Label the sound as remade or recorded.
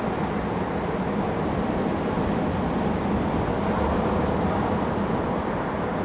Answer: recorded